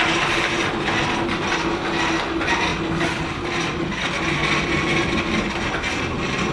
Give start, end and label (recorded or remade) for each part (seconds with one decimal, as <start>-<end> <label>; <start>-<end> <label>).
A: 0.0-6.5 recorded